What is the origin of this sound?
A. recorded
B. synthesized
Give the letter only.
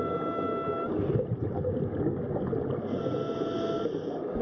A